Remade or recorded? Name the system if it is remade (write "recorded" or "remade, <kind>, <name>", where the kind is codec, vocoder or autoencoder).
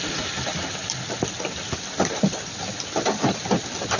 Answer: recorded